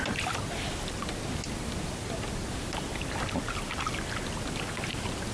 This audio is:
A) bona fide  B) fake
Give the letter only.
A